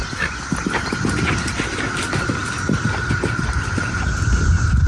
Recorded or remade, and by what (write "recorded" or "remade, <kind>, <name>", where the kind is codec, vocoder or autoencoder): recorded